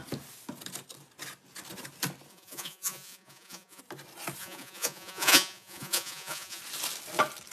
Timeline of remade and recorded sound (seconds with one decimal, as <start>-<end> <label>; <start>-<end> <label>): 0.0-2.3 recorded; 2.3-3.8 remade; 3.8-4.4 recorded; 4.4-6.6 remade; 6.6-7.5 recorded